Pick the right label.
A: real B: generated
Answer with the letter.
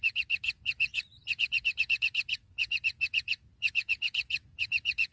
B